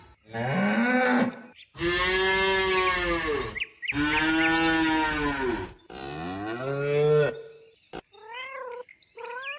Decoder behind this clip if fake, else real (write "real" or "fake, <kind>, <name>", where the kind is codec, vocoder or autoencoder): real